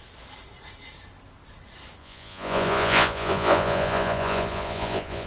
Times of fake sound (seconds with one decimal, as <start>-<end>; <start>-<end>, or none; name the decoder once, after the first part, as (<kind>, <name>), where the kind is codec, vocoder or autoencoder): 2.0-5.3 (vocoder, Vocos)